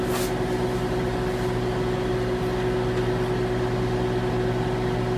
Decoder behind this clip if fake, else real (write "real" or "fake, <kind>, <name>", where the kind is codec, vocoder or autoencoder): real